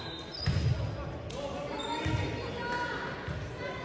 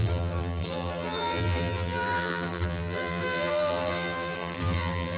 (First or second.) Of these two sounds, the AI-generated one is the second